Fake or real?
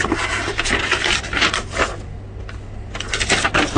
real